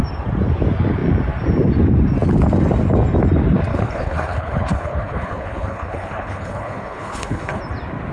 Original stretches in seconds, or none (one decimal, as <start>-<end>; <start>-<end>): 0.0-3.7; 7.6-8.1